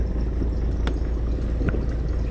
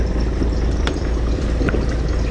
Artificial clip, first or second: second